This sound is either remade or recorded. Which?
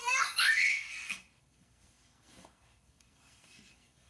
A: remade